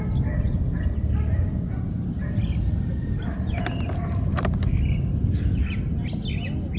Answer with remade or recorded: recorded